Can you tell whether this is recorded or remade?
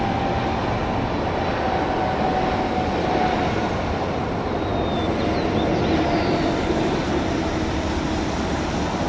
recorded